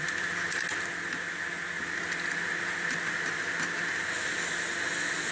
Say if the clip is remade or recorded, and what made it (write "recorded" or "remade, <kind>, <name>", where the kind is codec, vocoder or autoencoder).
recorded